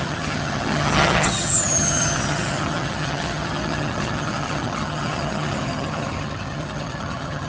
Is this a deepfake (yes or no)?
yes